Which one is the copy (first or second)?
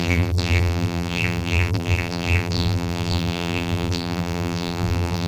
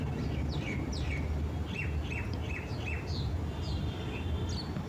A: first